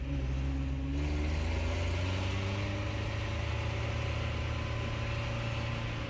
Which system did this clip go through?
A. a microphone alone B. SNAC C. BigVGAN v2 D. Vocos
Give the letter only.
A